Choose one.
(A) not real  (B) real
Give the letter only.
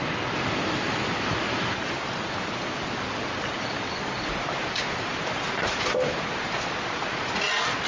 B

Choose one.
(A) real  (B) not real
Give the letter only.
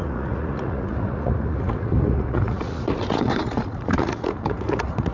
B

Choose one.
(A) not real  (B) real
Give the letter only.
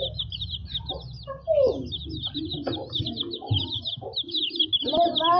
B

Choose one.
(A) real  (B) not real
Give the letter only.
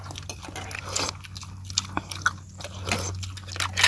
A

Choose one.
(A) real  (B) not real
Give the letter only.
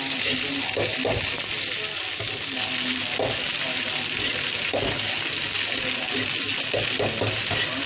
A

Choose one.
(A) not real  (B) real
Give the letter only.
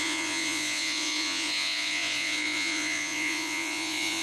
A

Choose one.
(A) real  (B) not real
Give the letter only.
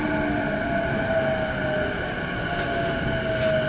A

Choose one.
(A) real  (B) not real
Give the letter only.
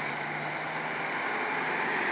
A